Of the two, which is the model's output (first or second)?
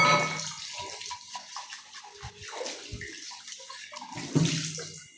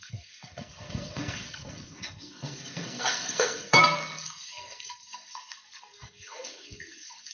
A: second